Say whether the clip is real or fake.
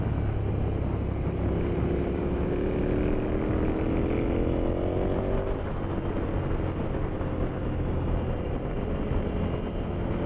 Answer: real